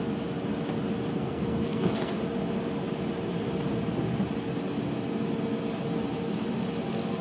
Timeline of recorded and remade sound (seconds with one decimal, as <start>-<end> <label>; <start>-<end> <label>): 0.0-1.1 recorded; 1.1-2.2 remade; 2.2-7.2 recorded